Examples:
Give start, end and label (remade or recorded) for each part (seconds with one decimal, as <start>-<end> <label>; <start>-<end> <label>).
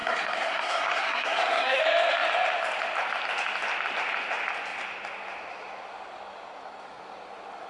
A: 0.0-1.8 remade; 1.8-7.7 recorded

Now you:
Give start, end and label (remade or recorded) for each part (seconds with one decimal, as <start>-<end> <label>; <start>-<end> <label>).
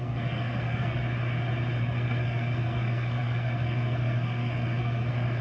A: 0.0-1.0 remade; 1.0-1.8 recorded; 1.8-5.4 remade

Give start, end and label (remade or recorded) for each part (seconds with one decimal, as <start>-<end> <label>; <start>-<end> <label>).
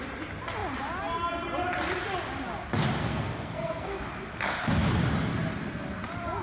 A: 0.0-3.0 recorded; 3.0-4.0 remade; 4.0-6.4 recorded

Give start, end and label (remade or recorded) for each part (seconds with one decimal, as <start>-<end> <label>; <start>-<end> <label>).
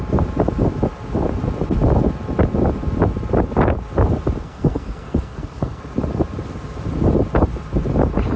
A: 0.0-4.4 recorded; 4.4-5.8 remade; 5.8-8.4 recorded